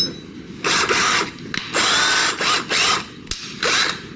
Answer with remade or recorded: recorded